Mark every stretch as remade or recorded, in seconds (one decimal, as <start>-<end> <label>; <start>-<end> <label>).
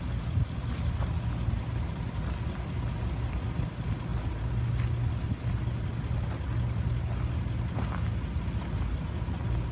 0.0-9.7 recorded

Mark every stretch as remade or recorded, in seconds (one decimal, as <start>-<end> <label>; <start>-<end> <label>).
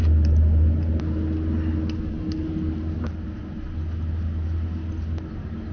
0.0-5.7 recorded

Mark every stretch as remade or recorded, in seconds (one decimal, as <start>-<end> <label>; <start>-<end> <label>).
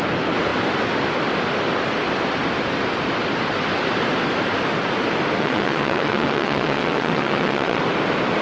0.0-5.4 recorded; 5.4-7.8 remade; 7.8-8.4 recorded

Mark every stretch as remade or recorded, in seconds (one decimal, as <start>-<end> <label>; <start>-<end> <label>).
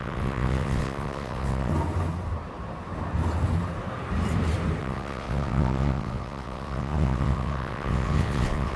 0.0-1.7 remade; 1.7-4.8 recorded; 4.8-8.8 remade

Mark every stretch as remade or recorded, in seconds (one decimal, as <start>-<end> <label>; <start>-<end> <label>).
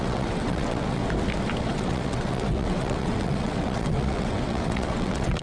0.0-1.0 remade; 1.0-1.6 recorded; 1.6-5.4 remade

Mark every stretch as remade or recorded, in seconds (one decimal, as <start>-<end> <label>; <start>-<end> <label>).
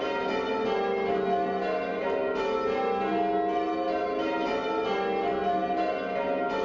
0.0-6.6 recorded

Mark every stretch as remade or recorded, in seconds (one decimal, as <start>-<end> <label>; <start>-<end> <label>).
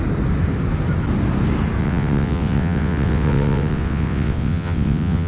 0.0-1.8 recorded; 1.8-5.3 remade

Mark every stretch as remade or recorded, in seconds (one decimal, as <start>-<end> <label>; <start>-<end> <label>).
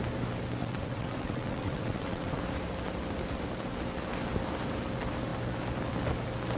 0.0-0.6 recorded; 0.6-2.4 remade; 2.4-6.6 recorded